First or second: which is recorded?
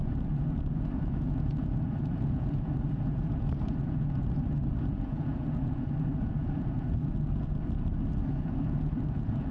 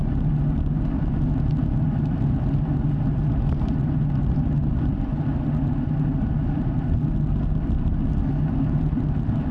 second